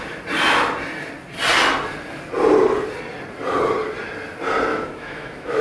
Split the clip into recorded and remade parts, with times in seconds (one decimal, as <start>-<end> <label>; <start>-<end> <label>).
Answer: 0.0-4.7 recorded; 4.7-5.6 remade